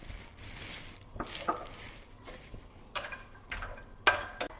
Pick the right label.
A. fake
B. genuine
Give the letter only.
B